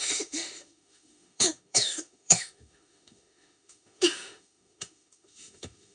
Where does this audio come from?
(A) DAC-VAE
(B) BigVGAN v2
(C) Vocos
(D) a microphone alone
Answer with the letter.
A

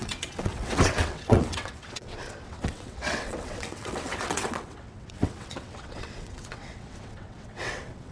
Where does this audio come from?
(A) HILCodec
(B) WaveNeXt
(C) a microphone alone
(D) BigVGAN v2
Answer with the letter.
B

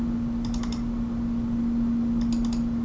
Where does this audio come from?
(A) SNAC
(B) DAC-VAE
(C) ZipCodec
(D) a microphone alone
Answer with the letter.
D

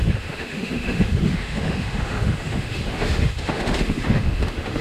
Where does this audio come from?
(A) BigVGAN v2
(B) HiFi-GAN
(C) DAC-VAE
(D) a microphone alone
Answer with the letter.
C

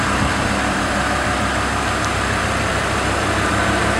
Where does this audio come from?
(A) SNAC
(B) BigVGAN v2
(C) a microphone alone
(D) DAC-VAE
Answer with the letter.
B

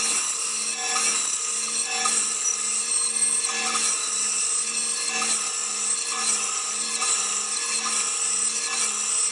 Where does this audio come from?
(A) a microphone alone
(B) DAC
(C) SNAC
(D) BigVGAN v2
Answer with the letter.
A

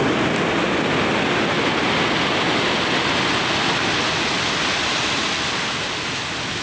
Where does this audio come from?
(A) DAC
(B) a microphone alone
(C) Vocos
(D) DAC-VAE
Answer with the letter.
B